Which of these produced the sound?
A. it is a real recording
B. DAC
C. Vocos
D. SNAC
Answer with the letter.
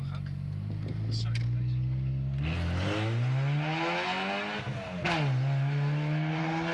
A